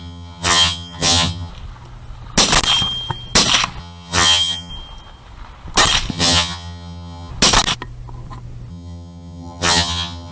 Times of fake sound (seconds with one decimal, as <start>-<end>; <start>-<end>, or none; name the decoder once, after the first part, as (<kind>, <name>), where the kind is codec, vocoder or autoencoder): 0.0-1.5 (vocoder, HiFi-GAN); 3.8-4.7; 6.1-7.3; 8.7-10.3